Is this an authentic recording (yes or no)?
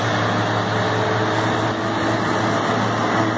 yes